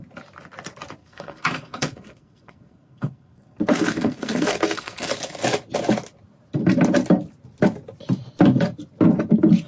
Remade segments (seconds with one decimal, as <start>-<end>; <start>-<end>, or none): 1.0-5.1